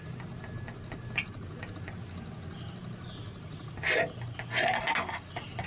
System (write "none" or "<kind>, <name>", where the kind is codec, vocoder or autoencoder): none